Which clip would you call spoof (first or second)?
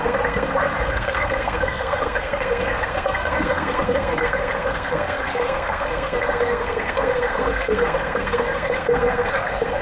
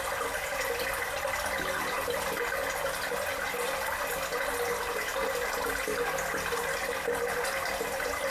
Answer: first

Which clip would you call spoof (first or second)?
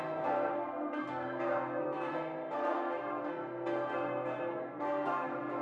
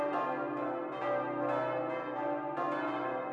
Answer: first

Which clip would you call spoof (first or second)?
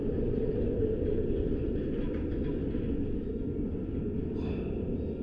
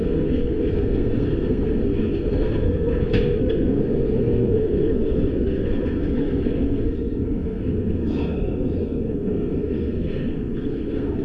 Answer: second